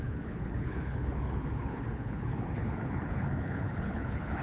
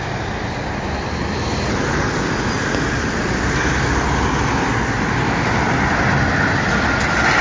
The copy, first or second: first